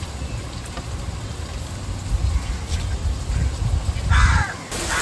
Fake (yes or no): no